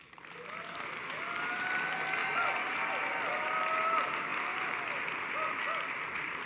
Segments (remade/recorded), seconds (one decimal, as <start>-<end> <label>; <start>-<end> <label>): 0.0-6.5 recorded